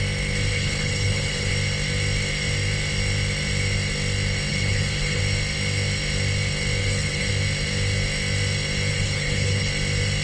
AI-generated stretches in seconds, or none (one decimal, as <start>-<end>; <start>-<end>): 0.5-1.5; 4.5-5.2; 6.8-7.3; 8.9-9.7